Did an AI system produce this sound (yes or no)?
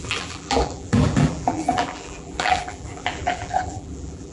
yes